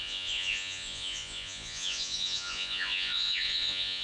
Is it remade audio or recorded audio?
remade